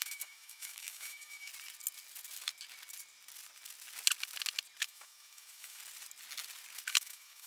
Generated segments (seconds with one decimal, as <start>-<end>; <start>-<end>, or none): 0.0-1.5; 4.8-5.8; 6.9-7.5